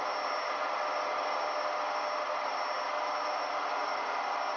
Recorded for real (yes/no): yes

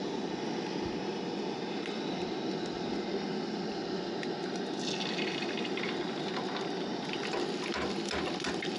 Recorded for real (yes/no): yes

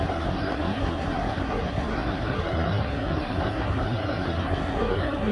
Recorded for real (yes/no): no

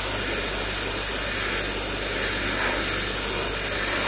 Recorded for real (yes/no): yes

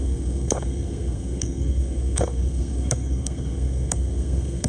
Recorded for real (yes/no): no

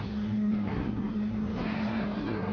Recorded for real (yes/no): no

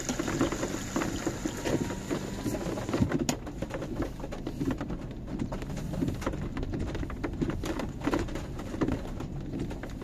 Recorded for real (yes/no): yes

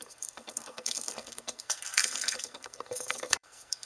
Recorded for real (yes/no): no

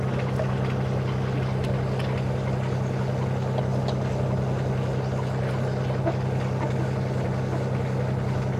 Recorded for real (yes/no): yes